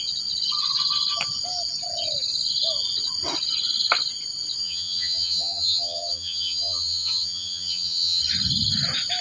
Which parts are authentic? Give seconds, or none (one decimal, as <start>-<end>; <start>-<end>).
0.0-4.6; 8.2-9.2